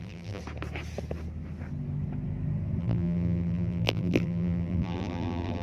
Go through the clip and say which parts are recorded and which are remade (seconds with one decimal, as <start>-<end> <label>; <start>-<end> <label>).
0.0-0.4 remade; 0.4-2.8 recorded; 2.8-5.6 remade